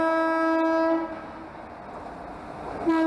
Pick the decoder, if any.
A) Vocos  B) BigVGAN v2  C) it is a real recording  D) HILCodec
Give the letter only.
C